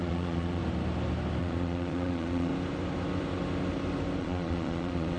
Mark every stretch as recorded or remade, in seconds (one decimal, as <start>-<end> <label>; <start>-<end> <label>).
0.0-0.6 remade; 0.6-1.4 recorded; 1.4-2.5 remade; 2.5-4.2 recorded; 4.2-5.2 remade